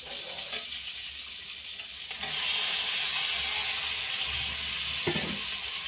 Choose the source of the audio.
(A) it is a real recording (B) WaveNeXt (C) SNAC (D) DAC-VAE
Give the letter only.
A